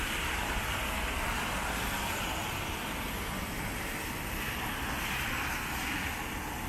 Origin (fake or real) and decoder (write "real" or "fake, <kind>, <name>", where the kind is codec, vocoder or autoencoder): real